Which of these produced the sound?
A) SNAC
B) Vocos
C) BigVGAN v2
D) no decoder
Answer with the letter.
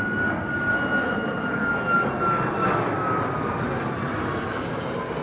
D